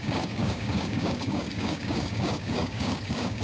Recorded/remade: remade